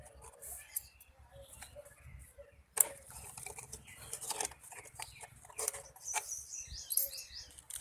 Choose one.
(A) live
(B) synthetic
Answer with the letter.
B